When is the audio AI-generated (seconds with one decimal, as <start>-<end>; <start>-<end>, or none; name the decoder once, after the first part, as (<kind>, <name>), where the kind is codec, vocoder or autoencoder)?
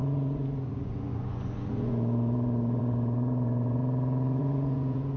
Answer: 0.0-3.8 (vocoder, Vocos); 4.4-5.2